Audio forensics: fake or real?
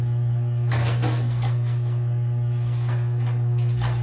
fake